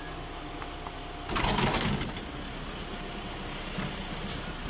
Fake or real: real